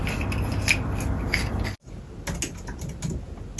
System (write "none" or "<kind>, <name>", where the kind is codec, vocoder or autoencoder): none